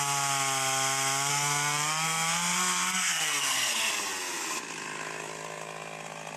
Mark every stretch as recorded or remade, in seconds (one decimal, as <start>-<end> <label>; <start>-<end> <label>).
0.0-1.3 recorded; 1.3-3.9 remade; 3.9-6.4 recorded